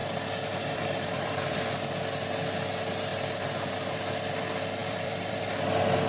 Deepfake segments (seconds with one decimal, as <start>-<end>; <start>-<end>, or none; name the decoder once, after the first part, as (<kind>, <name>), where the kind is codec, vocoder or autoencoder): 0.0-1.6 (vocoder, BigVGAN v2); 4.8-5.5